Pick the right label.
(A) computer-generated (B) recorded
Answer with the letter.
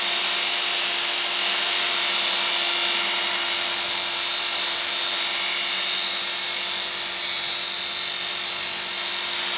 B